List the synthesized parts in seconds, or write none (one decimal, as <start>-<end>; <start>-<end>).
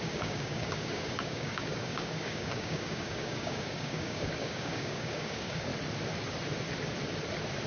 0.0-5.7